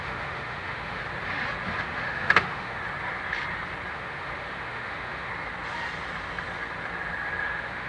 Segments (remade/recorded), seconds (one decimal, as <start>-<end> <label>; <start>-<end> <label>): 0.0-1.0 remade; 1.0-1.8 recorded; 1.8-2.8 remade; 2.8-3.9 recorded; 3.9-5.3 remade; 5.3-7.4 recorded; 7.4-7.9 remade